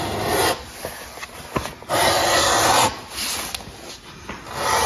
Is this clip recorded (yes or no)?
yes